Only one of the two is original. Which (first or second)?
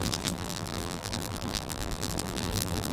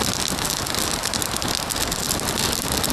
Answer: second